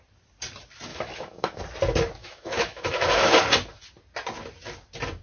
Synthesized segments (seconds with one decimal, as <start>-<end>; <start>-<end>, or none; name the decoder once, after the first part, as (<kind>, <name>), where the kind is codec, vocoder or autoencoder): 0.9-1.6 (autoencoder, DAC-VAE); 2.2-3.4